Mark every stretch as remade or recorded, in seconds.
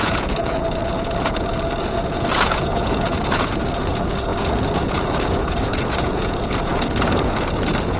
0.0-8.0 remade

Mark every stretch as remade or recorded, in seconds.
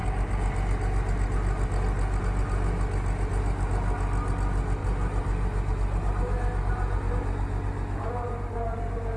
0.0-9.2 recorded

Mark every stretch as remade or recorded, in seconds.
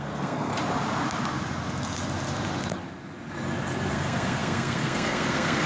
0.0-0.5 remade; 0.5-3.9 recorded; 3.9-5.7 remade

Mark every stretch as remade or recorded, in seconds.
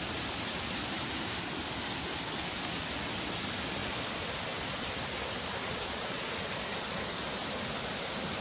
0.0-5.6 recorded; 5.6-6.3 remade; 6.3-8.4 recorded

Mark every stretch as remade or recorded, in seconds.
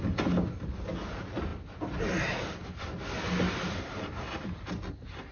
0.0-5.3 recorded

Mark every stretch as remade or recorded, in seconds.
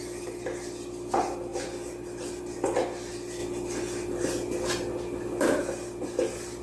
0.0-6.6 recorded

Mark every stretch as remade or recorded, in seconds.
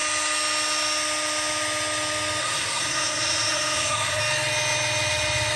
0.0-2.4 recorded; 2.4-4.2 remade; 4.2-5.6 recorded